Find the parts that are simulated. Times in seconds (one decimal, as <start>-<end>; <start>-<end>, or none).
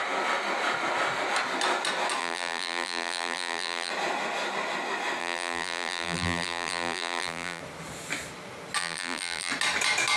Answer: 2.2-3.9; 5.2-7.6; 8.8-9.5